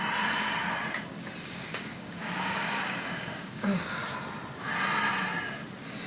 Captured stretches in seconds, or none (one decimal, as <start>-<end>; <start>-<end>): 0.0-1.4; 4.0-6.1